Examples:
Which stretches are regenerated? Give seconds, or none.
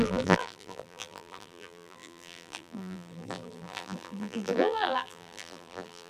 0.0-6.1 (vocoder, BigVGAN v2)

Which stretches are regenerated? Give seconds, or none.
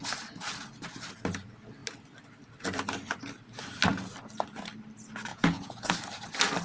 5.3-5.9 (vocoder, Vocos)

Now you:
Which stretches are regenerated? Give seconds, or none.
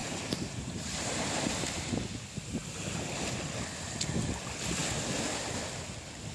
0.0-1.9 (vocoder, BigVGAN v2)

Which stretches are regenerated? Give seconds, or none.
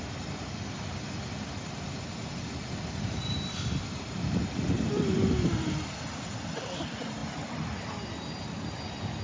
2.4-5.8 (vocoder, BigVGAN v2)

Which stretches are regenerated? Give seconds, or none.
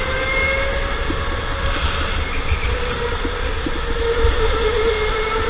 none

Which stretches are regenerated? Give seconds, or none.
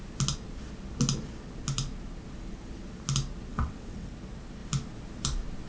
3.5-4.1 (vocoder, WaveNeXt)